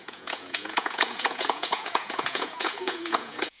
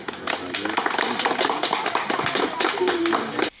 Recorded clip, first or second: second